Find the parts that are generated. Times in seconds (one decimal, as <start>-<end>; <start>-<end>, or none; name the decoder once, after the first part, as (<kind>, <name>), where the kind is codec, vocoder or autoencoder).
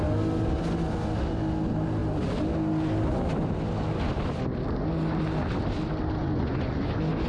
6.2-6.8 (vocoder, Vocos)